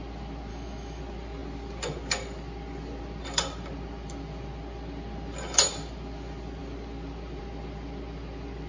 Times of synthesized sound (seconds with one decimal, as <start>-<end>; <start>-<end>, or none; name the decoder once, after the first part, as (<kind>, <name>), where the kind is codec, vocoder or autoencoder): 0.5-1.0 (autoencoder, DAC-VAE)